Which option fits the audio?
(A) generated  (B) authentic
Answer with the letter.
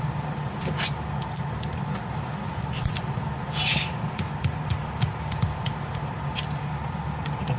A